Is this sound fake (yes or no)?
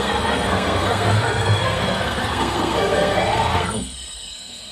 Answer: yes